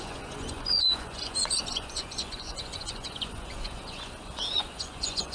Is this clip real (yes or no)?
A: no